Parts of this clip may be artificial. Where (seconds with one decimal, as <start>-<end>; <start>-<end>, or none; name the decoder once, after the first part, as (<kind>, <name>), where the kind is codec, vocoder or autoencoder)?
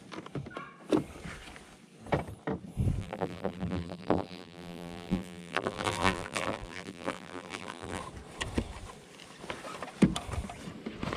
3.0-8.0 (vocoder, BigVGAN v2)